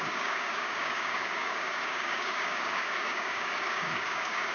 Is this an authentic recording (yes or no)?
no